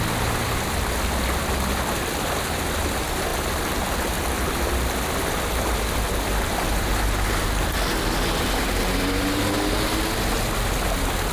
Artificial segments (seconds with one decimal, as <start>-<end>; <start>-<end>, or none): none